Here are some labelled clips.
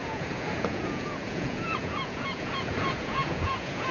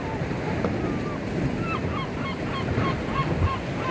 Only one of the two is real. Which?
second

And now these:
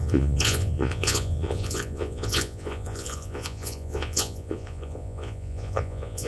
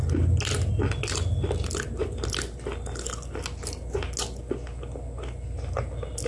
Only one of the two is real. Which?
second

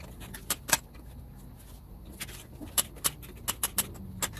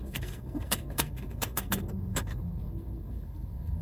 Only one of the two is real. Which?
first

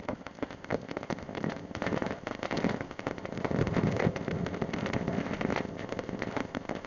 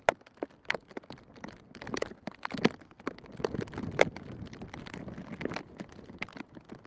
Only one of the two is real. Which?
second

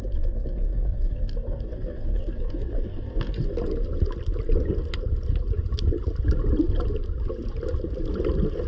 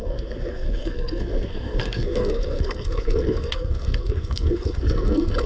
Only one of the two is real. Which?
first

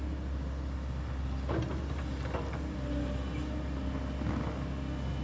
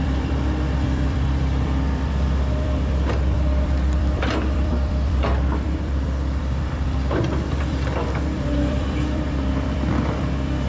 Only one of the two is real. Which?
first